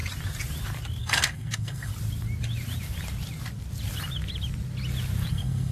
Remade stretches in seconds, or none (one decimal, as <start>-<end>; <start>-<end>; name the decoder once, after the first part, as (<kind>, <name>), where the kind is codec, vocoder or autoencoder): 1.0-1.9 (codec, SNAC); 5.3-5.7